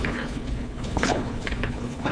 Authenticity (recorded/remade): remade